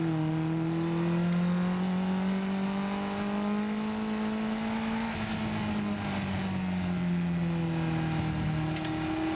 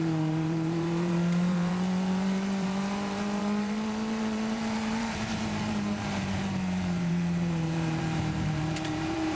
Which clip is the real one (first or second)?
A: first